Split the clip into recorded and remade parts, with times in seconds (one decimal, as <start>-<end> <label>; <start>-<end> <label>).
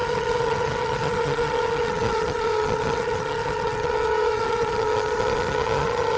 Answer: 0.0-6.2 remade